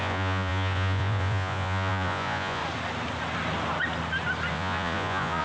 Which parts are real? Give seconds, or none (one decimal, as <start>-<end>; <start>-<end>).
2.6-4.5